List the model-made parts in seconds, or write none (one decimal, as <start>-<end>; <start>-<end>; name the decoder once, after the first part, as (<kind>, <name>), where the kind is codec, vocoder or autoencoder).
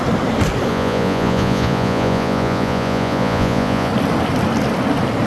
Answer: 0.7-3.9 (vocoder, Vocos)